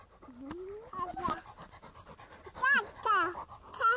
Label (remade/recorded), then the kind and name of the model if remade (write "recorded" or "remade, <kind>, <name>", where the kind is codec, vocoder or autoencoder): recorded